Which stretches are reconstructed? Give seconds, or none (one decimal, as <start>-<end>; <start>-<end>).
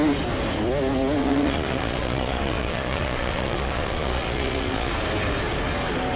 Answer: 1.2-4.9